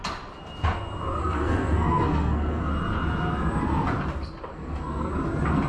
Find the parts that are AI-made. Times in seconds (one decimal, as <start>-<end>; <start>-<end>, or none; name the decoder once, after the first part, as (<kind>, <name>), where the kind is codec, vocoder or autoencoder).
1.2-2.7 (codec, SNAC); 4.5-5.1